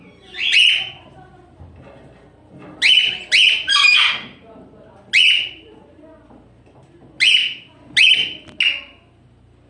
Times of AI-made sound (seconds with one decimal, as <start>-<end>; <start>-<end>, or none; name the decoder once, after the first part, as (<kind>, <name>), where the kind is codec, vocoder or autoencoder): none